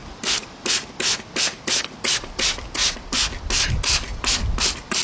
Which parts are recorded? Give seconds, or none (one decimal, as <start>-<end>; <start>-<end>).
0.0-5.0